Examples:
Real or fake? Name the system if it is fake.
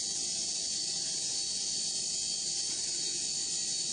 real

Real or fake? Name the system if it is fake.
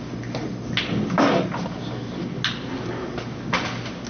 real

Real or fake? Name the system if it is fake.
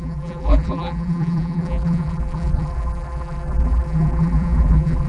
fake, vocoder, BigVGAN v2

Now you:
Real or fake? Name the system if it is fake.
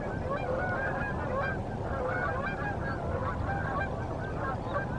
real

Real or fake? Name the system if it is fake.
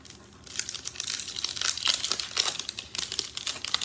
real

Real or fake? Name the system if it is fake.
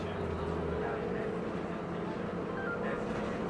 real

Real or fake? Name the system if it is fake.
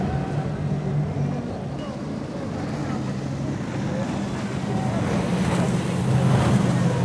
real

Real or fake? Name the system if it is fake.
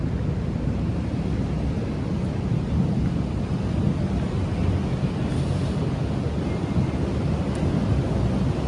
real